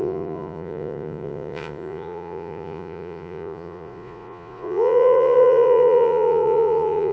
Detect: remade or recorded remade